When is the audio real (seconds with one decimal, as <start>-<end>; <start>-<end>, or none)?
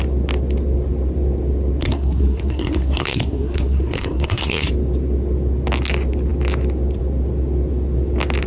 0.0-1.8; 4.7-8.5